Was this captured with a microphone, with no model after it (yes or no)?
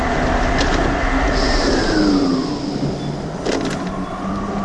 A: yes